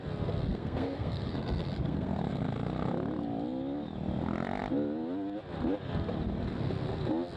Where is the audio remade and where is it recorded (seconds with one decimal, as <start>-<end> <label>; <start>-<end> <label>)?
0.0-0.5 recorded; 0.5-2.2 remade; 2.2-7.4 recorded